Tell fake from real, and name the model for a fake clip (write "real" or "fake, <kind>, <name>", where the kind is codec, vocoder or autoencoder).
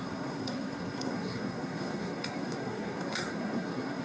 fake, codec, SNAC